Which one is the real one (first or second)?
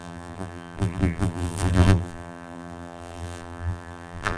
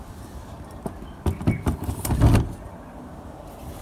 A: second